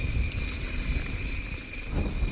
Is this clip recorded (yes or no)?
yes